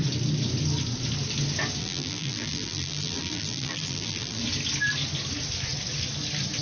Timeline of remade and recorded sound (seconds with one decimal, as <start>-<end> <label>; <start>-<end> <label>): 0.0-1.8 recorded; 1.8-4.4 remade; 4.4-6.6 recorded